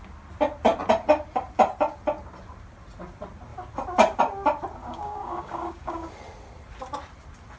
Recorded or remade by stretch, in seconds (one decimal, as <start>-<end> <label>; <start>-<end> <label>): 0.0-4.8 recorded; 4.8-6.1 remade; 6.1-7.6 recorded